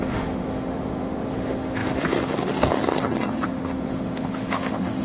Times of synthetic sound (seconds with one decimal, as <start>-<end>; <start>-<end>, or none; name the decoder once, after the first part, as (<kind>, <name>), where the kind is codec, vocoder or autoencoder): 0.0-5.0 (autoencoder, DAC-VAE)